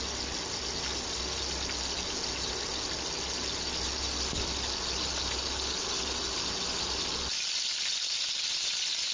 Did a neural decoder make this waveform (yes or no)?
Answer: no